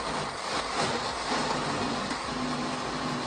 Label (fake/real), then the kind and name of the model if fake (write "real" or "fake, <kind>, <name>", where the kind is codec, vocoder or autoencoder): real